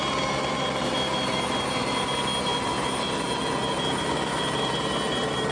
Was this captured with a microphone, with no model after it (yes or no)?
yes